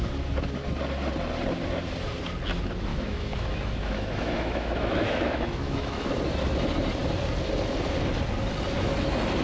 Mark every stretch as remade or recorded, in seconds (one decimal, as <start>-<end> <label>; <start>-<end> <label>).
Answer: 0.0-2.9 recorded; 2.9-6.2 remade; 6.2-9.4 recorded